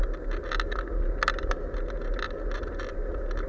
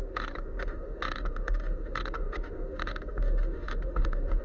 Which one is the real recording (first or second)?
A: first